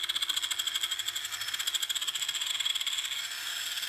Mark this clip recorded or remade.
recorded